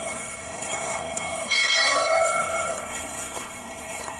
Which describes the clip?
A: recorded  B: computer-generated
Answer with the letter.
B